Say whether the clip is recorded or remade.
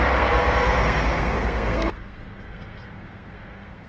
remade